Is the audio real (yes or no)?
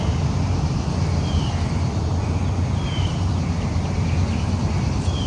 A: yes